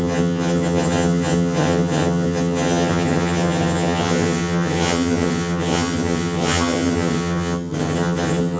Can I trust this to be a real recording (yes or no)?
no